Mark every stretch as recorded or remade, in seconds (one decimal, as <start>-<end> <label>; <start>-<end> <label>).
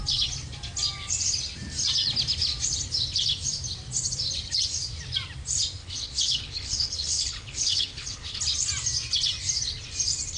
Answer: 0.0-5.8 recorded; 5.8-8.4 remade; 8.4-10.4 recorded